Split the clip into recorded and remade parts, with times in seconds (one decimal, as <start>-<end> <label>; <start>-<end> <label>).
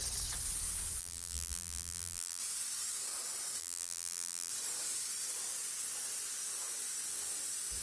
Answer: 0.0-1.0 recorded; 1.0-2.4 remade; 2.4-3.6 recorded; 3.6-4.5 remade; 4.5-7.8 recorded